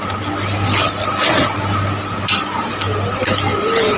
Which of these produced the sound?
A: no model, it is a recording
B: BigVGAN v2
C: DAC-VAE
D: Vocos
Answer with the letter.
A